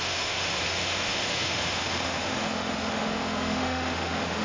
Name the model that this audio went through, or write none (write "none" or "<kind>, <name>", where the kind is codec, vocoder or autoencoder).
autoencoder, DAC-VAE